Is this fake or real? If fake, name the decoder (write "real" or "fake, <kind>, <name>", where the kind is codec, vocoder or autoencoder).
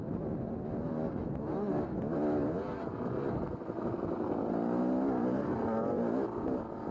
real